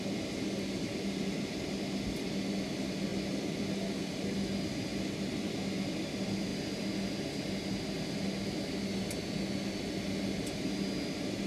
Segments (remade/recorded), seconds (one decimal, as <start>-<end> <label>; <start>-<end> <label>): 0.0-11.5 recorded